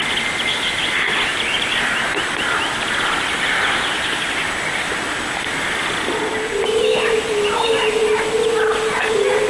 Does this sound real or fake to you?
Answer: real